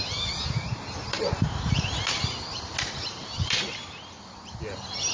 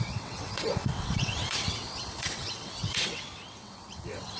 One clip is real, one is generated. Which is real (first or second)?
first